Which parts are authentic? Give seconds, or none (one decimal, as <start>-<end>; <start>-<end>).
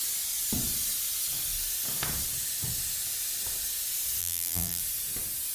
0.0-4.2; 4.8-5.5